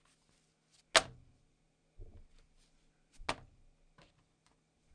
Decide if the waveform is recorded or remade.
recorded